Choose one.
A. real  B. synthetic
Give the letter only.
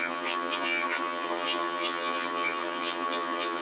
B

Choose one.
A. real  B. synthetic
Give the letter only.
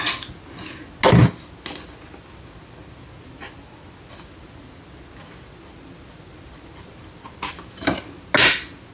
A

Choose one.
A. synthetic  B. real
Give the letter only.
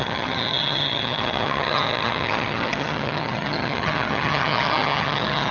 A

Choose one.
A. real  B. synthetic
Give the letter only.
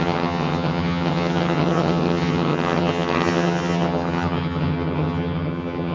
B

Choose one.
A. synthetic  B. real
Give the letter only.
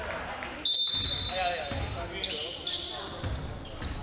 B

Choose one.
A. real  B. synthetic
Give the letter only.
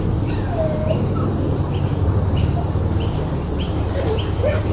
A